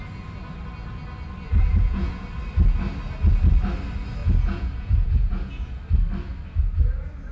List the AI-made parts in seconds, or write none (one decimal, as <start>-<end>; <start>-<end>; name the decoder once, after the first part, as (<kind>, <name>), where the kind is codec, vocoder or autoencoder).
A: 1.5-2.1 (vocoder, Vocos); 4.2-5.8